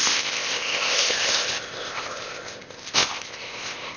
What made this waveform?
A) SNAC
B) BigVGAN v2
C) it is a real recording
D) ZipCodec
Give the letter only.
D